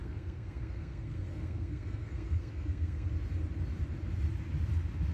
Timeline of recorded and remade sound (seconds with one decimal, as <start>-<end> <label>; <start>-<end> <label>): 0.0-3.1 remade; 3.1-5.1 recorded